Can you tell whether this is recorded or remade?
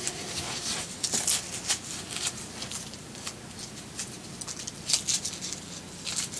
recorded